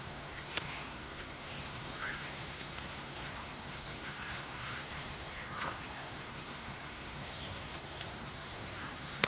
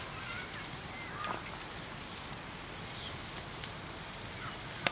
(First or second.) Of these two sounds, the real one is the second